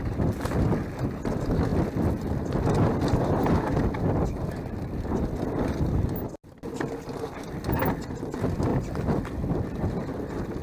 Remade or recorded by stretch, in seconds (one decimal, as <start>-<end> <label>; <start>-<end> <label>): 0.0-8.7 recorded; 8.7-9.2 remade; 9.2-10.6 recorded